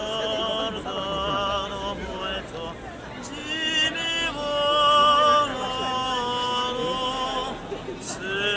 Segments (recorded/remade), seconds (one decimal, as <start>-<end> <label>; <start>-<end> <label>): 0.0-8.6 recorded